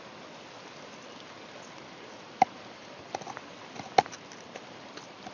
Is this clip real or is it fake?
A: real